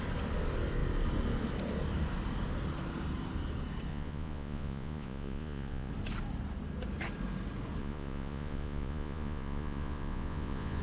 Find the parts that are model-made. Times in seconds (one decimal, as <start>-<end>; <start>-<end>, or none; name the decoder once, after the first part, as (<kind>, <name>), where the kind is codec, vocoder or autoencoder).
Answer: 3.9-5.9 (vocoder, Vocos); 7.8-10.8